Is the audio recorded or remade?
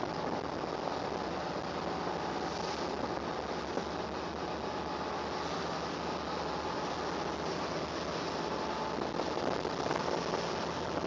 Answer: recorded